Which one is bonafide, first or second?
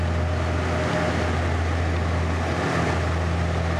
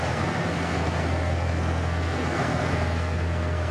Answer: first